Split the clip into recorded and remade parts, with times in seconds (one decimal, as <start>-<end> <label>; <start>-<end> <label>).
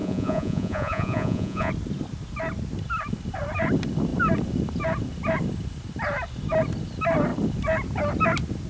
0.0-1.7 remade; 1.7-8.7 recorded